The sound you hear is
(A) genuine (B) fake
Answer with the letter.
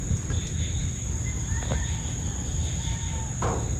A